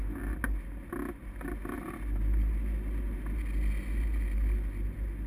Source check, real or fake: real